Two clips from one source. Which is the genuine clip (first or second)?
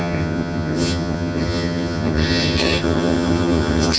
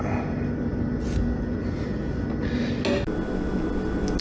second